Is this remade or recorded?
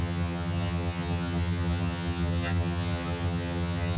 remade